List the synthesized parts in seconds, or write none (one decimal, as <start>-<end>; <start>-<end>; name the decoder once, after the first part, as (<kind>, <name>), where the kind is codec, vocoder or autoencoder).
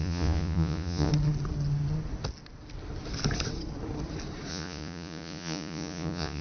0.0-1.1 (vocoder, Vocos); 4.5-6.4